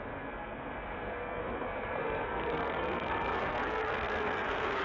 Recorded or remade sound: remade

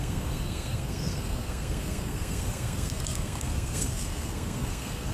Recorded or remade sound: remade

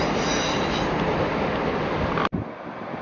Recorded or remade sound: recorded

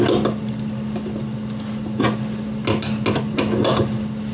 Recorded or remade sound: recorded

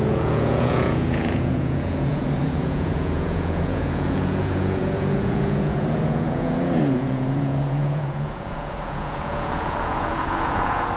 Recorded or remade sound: remade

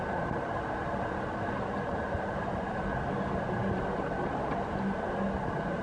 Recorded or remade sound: recorded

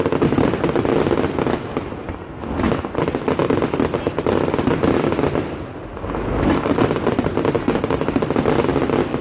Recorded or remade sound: recorded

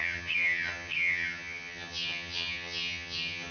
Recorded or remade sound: remade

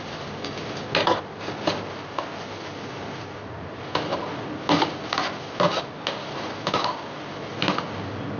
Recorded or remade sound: recorded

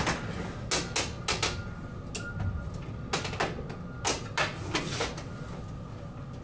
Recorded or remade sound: recorded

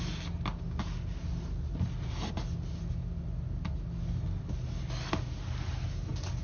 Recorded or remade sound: recorded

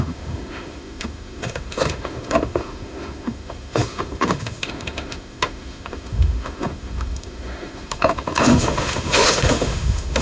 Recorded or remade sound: remade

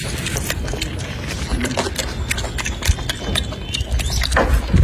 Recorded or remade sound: recorded